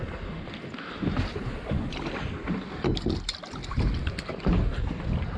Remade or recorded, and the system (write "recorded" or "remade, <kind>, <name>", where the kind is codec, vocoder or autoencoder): recorded